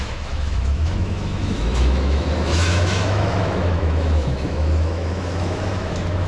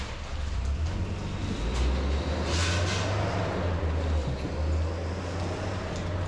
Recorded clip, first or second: second